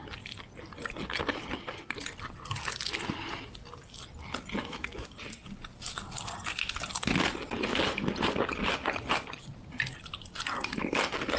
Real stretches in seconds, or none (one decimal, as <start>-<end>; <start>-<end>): 0.0-4.6; 5.1-11.4